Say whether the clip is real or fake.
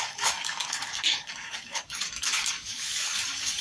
fake